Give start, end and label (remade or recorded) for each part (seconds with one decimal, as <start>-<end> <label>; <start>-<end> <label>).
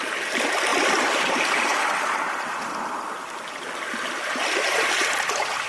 0.0-5.7 remade